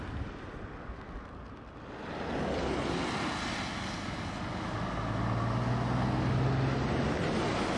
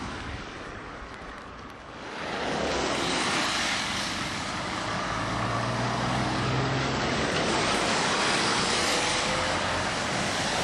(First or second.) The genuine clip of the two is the first